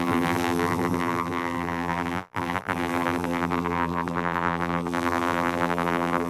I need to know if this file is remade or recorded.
remade